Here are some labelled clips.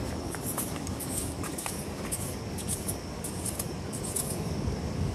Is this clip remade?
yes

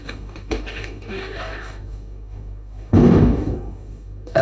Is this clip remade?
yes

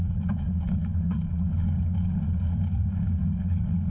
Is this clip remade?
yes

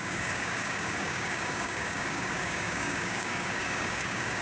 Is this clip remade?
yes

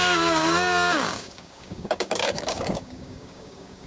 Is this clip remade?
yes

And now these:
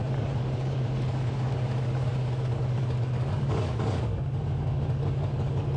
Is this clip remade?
yes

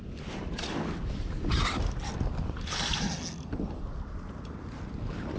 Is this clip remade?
no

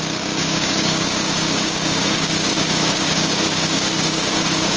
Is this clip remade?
yes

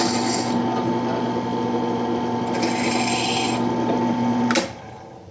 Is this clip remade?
no